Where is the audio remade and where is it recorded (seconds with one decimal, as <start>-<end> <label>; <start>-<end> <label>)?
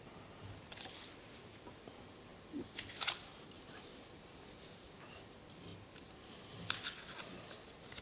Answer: 0.0-8.0 recorded